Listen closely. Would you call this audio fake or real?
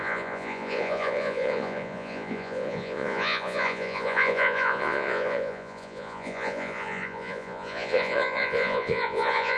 fake